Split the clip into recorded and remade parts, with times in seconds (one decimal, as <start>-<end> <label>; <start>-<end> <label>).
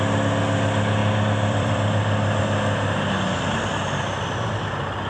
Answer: 0.0-1.0 recorded; 1.0-2.4 remade; 2.4-5.1 recorded